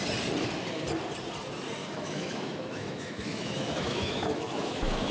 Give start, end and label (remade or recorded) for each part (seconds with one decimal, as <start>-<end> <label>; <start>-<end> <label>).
0.0-1.8 recorded; 1.8-5.1 remade